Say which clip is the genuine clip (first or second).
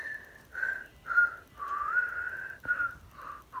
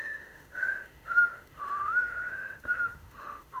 first